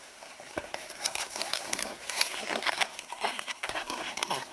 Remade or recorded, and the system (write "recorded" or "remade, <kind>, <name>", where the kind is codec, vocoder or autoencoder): remade, codec, SNAC